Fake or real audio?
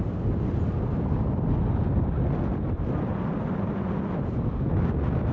real